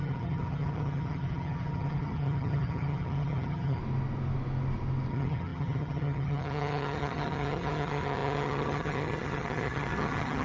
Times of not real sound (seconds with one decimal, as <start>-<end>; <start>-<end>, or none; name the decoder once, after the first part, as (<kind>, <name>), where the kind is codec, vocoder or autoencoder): 0.0-3.8 (vocoder, HiFi-GAN); 5.1-10.4